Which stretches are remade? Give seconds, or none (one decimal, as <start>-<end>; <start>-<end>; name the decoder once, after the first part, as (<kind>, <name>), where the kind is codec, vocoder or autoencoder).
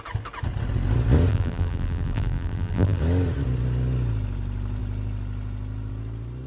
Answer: 1.3-3.0 (vocoder, BigVGAN v2)